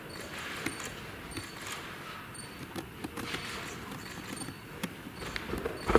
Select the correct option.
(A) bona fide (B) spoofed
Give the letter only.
A